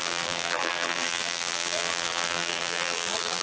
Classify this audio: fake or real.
fake